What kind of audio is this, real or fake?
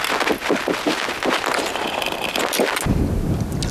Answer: real